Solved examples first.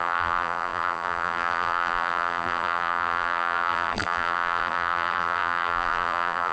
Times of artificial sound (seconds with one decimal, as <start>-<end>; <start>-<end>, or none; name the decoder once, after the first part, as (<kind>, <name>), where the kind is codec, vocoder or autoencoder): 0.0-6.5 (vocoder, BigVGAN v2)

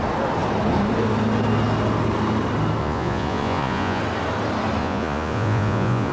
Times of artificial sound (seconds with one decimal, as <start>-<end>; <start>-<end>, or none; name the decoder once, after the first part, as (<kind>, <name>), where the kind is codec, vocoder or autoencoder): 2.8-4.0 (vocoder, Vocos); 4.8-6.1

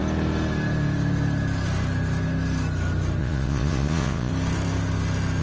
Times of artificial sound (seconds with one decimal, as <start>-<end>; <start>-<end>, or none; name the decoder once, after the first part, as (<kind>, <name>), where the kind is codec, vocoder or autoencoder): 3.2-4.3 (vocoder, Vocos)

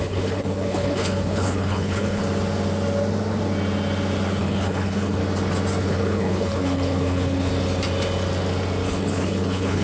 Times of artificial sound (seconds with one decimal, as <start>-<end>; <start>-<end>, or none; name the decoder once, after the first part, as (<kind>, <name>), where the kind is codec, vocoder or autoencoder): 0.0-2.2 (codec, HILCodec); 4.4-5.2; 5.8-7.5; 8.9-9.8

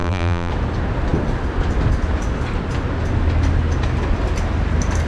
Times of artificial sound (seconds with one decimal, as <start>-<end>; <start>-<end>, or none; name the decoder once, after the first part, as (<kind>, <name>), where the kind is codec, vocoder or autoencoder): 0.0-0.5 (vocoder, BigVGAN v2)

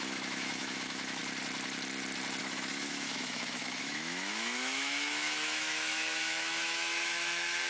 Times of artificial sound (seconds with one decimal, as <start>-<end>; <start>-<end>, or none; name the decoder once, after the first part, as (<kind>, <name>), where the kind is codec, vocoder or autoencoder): 0.0-1.2 (autoencoder, DAC-VAE); 2.4-7.7